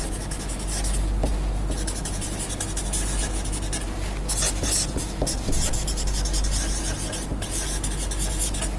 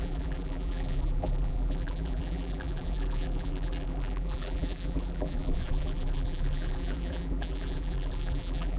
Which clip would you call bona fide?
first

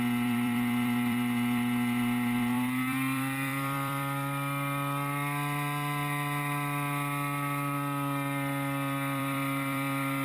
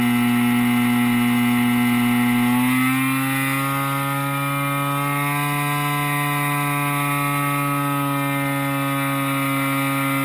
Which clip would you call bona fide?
second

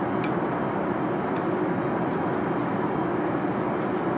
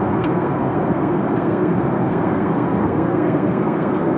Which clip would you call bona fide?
first